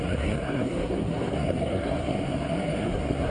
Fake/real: fake